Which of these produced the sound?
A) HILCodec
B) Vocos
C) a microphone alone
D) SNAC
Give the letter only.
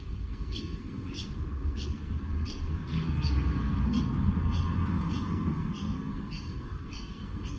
D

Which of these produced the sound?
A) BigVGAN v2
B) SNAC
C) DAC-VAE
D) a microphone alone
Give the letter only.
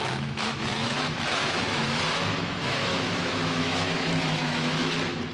C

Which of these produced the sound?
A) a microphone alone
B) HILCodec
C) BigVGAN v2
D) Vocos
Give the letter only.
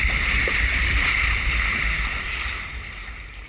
A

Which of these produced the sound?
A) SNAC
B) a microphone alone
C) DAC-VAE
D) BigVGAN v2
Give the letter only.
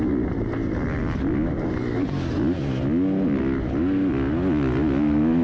B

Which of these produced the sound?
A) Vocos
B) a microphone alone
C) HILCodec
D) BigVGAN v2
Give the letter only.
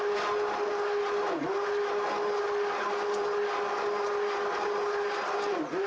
B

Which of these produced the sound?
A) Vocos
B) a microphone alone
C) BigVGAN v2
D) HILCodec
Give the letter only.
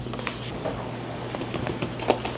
B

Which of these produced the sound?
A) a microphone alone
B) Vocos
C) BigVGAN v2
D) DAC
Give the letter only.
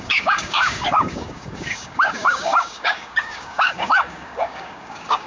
D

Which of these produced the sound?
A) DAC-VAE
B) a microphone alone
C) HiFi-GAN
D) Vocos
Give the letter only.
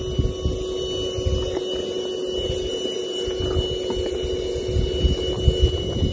B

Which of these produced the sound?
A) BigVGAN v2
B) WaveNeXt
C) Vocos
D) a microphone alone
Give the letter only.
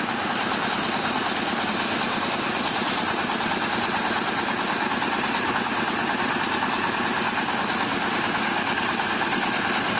D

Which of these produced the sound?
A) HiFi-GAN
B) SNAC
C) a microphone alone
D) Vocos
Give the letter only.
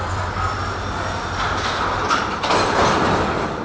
C